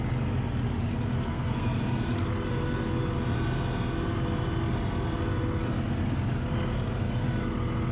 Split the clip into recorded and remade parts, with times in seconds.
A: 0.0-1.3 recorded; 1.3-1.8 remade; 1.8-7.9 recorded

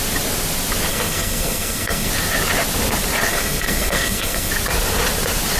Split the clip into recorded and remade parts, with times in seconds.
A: 0.0-0.9 recorded; 0.9-2.1 remade; 2.1-3.3 recorded; 3.3-4.5 remade; 4.5-5.6 recorded